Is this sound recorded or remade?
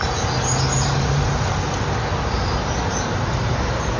recorded